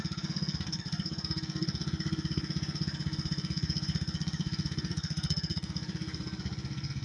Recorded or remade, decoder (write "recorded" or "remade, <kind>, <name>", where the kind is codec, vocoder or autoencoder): remade, codec, SNAC